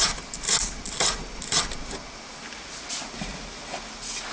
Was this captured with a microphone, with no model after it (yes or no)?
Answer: yes